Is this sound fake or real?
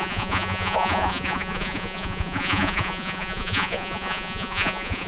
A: fake